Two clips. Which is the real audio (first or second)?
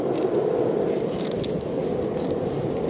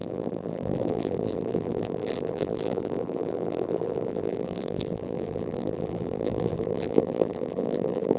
first